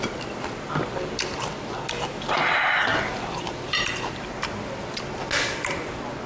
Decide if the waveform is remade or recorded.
recorded